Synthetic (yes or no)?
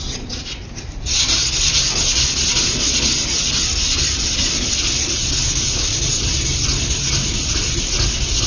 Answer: no